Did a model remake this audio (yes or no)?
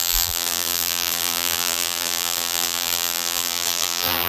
yes